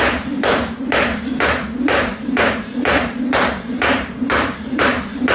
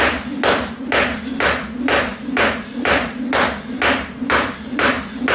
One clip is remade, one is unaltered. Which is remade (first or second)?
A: first